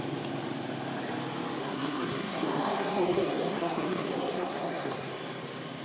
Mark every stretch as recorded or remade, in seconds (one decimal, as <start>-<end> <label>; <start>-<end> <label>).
0.0-1.6 recorded; 1.6-5.1 remade; 5.1-5.8 recorded